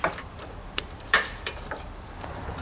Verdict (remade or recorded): remade